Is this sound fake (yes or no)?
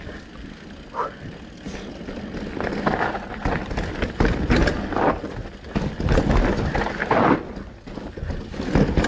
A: no